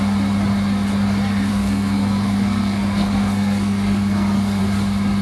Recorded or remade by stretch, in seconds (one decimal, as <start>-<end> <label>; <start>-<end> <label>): 0.0-1.5 recorded; 1.5-4.6 remade; 4.6-5.2 recorded